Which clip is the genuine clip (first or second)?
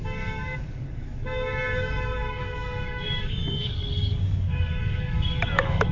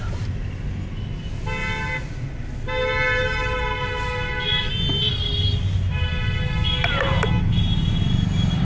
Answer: second